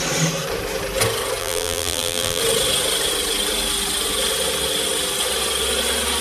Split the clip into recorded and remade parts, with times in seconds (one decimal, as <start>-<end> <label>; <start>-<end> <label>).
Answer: 0.0-1.4 recorded; 1.4-2.4 remade; 2.4-6.2 recorded